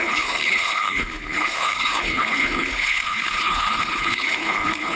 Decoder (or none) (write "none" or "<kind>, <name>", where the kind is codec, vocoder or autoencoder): codec, HILCodec